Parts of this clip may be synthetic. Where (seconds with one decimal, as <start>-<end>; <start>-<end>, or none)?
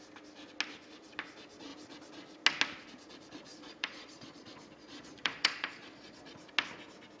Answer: 3.5-6.3